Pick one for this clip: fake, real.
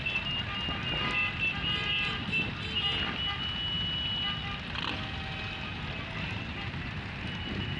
real